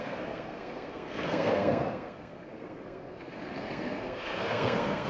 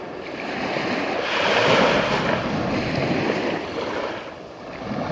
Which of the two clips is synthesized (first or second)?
first